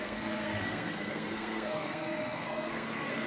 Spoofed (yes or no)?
yes